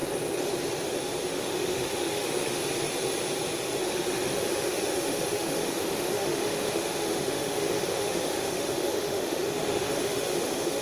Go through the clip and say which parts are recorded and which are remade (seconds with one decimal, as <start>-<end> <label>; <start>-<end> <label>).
0.0-1.3 recorded; 1.3-2.6 remade; 2.6-3.8 recorded; 3.8-10.8 remade